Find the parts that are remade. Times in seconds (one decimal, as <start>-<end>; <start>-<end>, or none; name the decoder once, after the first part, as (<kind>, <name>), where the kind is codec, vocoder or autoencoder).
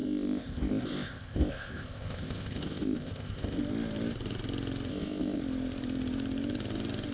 0.0-3.6 (codec, ZipCodec); 4.9-5.4